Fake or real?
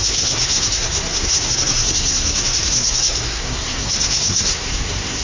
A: fake